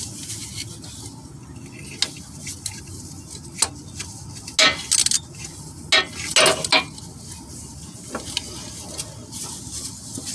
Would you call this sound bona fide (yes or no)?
yes